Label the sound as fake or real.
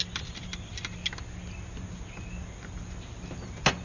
real